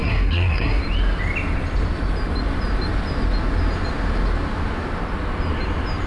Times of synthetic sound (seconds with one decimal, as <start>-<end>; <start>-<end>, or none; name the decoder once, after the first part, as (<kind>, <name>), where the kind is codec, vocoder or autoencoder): 0.0-0.8 (codec, SNAC)